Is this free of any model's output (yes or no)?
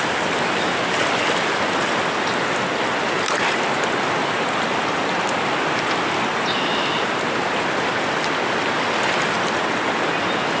yes